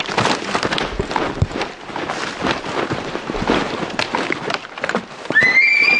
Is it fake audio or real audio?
real